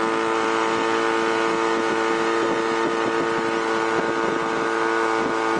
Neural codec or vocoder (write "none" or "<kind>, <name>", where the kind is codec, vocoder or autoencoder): none